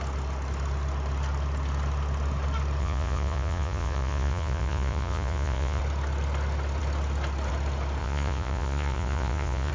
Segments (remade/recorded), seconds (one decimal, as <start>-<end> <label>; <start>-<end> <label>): 0.0-2.8 recorded; 2.8-5.8 remade; 5.8-8.0 recorded; 8.0-9.7 remade